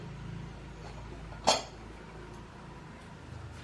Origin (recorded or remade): recorded